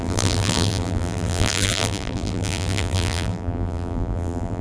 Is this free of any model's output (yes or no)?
no